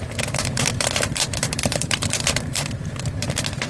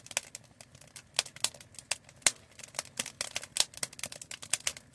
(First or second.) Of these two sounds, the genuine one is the second